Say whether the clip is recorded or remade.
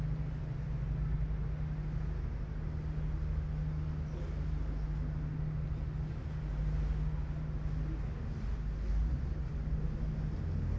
recorded